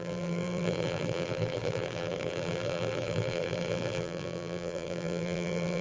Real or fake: fake